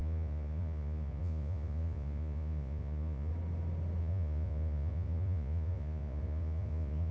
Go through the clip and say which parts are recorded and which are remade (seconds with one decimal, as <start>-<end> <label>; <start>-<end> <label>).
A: 0.0-3.3 remade; 3.3-4.0 recorded; 4.0-7.1 remade